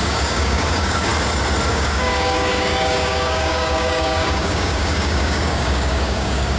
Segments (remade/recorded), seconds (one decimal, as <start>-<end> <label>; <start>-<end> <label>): 0.0-1.1 remade; 1.1-1.7 recorded; 1.7-6.6 remade